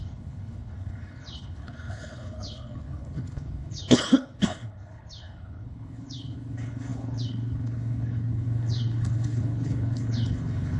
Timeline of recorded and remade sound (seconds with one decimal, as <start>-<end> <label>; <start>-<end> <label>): 0.0-10.8 remade